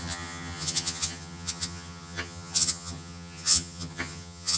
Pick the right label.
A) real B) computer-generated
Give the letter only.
B